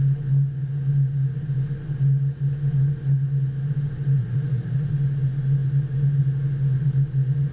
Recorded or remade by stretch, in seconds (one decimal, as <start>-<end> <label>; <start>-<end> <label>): 0.0-4.2 recorded; 4.2-4.9 remade; 4.9-7.5 recorded